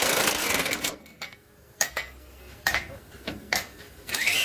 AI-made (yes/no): yes